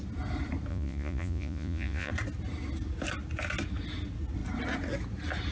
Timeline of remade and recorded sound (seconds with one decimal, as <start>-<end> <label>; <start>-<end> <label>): 0.0-0.7 recorded; 0.7-2.1 remade; 2.1-5.5 recorded